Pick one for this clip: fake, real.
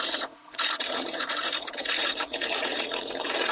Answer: fake